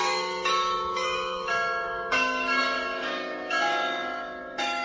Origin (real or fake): fake